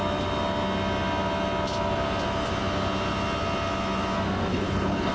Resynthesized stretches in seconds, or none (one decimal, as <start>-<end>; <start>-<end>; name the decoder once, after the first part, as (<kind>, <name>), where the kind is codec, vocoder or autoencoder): 4.5-5.1 (codec, HILCodec)